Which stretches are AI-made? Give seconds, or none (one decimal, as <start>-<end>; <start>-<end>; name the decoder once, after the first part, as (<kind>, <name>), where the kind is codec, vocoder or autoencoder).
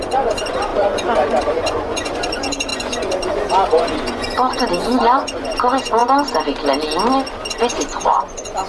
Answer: 0.0-6.0 (vocoder, Vocos); 7.5-8.7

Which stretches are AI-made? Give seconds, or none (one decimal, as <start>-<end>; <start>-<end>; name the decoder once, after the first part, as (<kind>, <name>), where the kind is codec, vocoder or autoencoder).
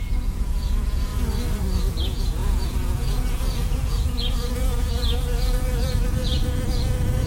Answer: 0.0-1.1 (vocoder, Vocos); 1.9-7.3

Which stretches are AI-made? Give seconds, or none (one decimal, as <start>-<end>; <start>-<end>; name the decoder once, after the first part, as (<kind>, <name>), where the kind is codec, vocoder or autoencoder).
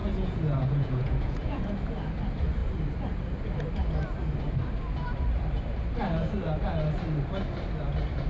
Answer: 0.0-1.6 (vocoder, Vocos)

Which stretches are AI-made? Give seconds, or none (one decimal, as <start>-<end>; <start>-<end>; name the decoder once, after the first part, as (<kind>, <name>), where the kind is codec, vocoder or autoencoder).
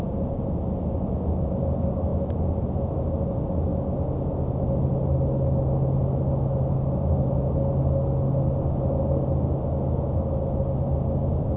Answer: none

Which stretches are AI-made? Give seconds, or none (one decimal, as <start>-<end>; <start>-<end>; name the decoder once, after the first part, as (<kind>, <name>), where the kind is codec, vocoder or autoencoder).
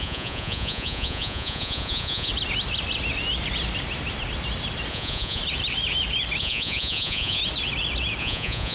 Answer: 0.0-2.3 (vocoder, Vocos); 4.9-5.4; 6.4-7.4; 8.2-8.7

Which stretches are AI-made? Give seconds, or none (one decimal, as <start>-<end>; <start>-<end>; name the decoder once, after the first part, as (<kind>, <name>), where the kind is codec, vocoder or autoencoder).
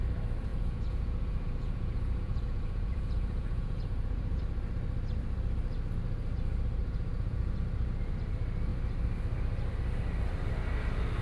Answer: 0.5-4.4 (vocoder, Vocos); 6.8-7.6